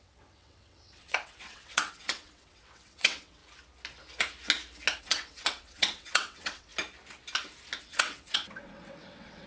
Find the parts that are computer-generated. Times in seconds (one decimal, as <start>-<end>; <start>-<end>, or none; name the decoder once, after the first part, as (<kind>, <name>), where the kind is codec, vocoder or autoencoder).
0.0-3.4 (vocoder, WaveNeXt); 5.0-6.7; 7.8-9.5